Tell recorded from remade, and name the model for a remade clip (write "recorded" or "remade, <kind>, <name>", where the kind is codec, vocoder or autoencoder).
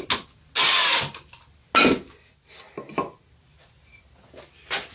recorded